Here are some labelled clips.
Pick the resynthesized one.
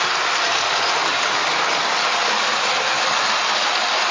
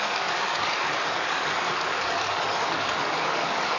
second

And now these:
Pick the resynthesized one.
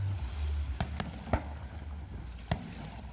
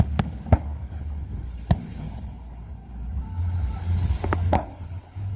second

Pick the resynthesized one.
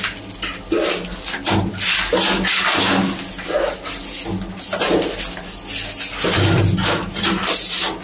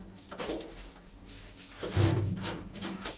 second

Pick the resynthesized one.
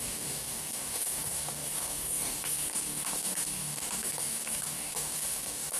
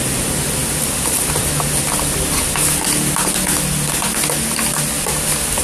first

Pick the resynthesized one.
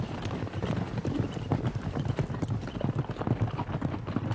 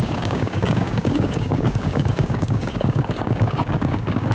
second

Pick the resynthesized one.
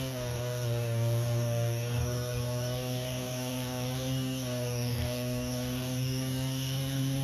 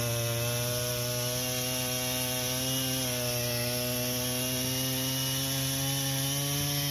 first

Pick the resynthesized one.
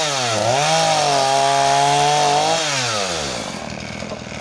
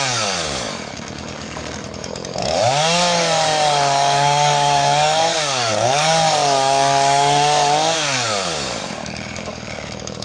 second